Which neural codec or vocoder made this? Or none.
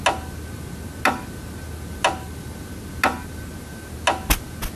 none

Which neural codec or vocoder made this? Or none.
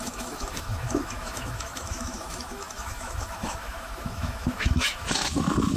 autoencoder, DAC-VAE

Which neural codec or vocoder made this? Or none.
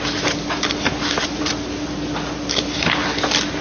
none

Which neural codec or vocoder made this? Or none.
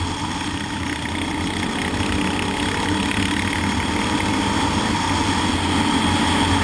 none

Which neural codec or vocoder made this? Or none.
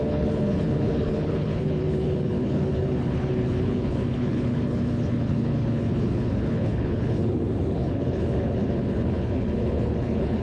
codec, HILCodec